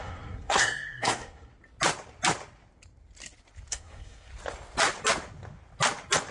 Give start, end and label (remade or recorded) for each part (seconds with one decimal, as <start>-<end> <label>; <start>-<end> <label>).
0.0-1.5 remade; 1.5-3.7 recorded; 3.7-4.3 remade; 4.3-6.3 recorded